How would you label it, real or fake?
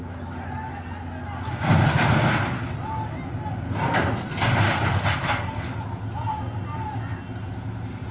real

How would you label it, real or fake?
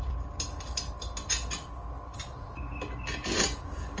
real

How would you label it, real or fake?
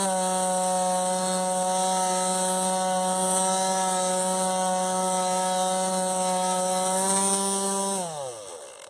real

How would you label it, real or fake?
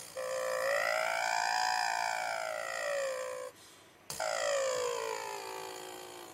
real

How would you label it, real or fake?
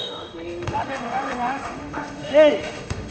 fake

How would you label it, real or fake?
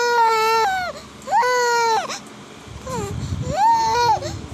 real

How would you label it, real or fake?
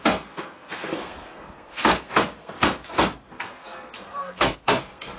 fake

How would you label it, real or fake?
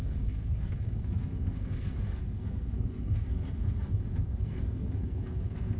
fake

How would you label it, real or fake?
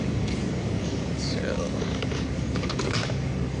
fake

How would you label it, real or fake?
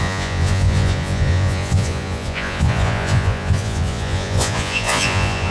fake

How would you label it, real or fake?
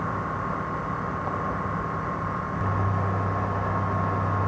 real